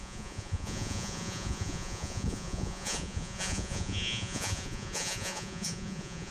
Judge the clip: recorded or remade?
remade